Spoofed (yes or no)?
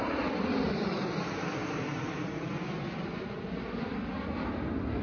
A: no